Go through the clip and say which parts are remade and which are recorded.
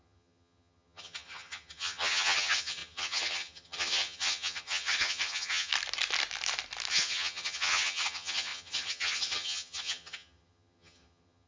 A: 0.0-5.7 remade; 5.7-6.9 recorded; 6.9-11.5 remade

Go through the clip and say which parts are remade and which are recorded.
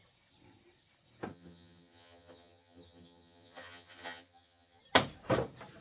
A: 0.0-1.3 recorded; 1.3-4.8 remade; 4.8-5.8 recorded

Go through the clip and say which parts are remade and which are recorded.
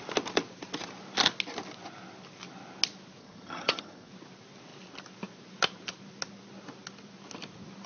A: 0.0-3.2 recorded; 3.2-4.1 remade; 4.1-7.9 recorded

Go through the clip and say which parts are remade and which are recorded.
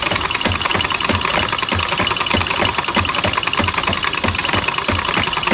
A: 0.0-5.5 recorded